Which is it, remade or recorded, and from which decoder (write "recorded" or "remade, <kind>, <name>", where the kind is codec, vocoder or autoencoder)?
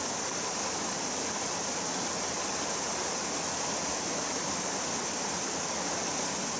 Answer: recorded